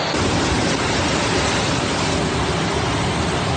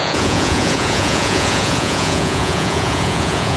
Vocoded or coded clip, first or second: second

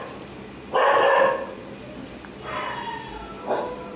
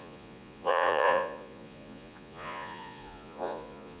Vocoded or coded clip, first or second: second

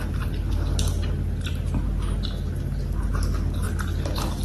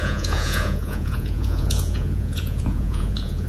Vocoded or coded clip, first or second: second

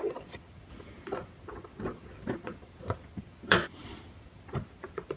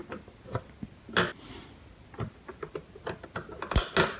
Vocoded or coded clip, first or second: first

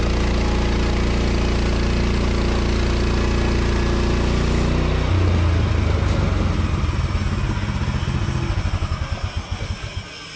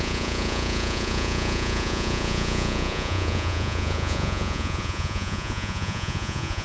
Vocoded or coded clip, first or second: second